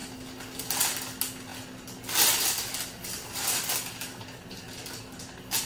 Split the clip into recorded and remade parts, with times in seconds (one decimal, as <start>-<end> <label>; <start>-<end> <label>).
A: 0.0-5.7 recorded